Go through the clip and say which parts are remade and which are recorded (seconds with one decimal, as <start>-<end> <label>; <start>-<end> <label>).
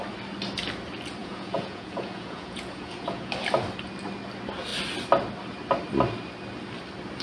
0.0-1.2 recorded; 1.2-3.3 remade; 3.3-7.2 recorded